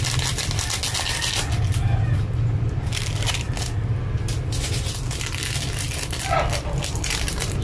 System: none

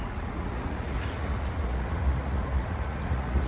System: vocoder, Vocos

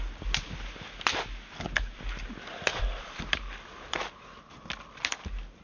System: none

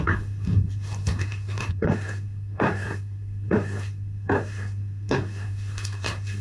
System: codec, SNAC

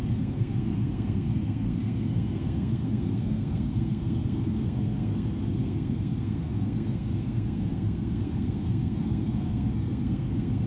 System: codec, SNAC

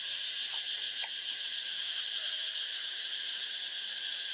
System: none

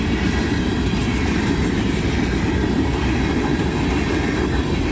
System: none